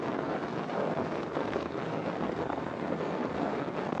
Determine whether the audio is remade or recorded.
remade